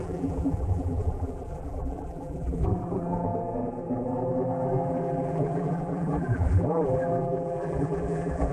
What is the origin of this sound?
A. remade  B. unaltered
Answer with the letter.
A